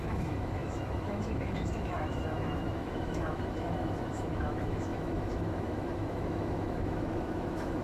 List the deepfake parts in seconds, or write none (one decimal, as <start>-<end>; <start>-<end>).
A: 0.0-7.8